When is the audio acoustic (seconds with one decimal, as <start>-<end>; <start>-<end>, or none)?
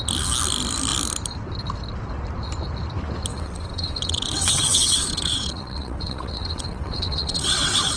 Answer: 0.0-3.3